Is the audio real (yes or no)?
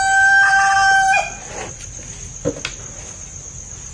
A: yes